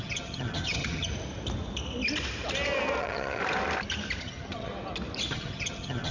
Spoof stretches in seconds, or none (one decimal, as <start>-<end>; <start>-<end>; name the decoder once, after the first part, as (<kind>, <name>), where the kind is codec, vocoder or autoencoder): 0.0-1.1 (vocoder, HiFi-GAN); 3.0-3.4; 4.2-4.7; 5.3-6.1